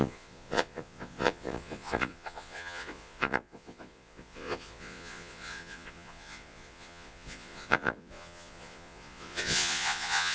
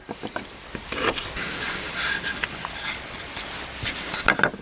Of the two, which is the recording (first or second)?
second